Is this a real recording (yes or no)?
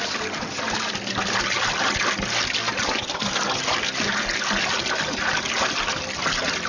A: yes